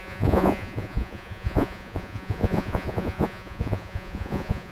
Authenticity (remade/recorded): remade